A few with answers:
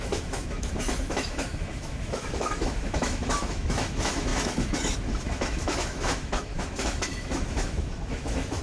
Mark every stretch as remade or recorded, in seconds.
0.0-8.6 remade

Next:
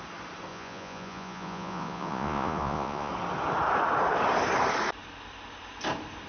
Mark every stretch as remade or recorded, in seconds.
0.0-0.5 recorded; 0.5-3.1 remade; 3.1-6.3 recorded

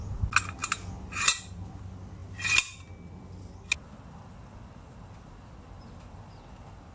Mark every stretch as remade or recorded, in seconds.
0.0-6.9 recorded

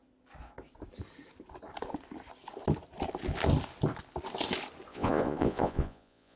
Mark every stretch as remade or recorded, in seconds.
0.0-4.9 recorded; 4.9-6.4 remade